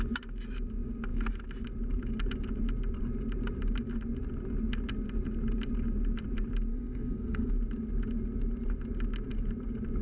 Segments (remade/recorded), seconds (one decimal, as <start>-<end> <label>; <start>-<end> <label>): 0.0-6.7 recorded; 6.7-7.5 remade; 7.5-10.0 recorded